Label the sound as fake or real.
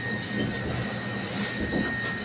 real